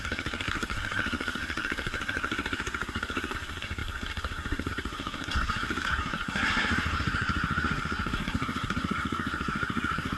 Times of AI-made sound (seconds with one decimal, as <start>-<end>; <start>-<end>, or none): 0.0-10.2